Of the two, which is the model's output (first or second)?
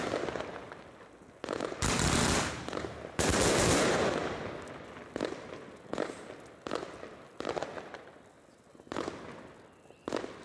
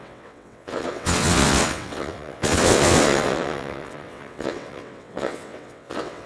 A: second